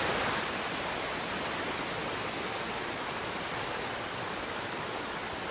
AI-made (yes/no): no